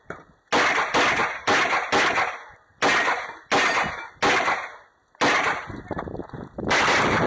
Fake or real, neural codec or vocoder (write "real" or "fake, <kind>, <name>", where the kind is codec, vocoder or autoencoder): real